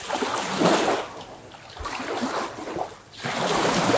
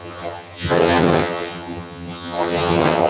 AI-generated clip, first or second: second